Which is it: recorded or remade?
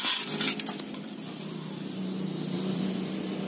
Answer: remade